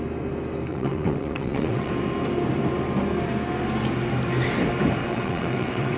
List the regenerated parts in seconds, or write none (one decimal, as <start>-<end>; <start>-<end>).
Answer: 0.7-1.9; 5.0-6.0